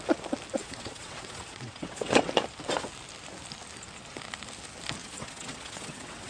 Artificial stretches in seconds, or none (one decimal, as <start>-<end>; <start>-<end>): 0.6-2.3; 5.0-6.3